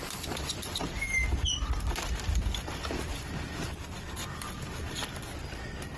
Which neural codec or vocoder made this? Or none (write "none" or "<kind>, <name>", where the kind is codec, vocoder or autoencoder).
none